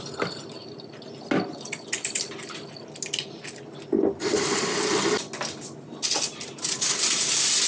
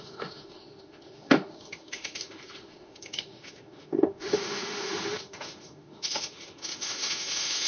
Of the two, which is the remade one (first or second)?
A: second